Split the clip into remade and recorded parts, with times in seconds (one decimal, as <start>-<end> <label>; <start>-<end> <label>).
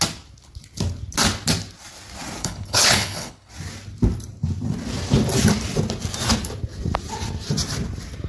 0.0-2.4 recorded; 2.4-3.5 remade; 3.5-8.3 recorded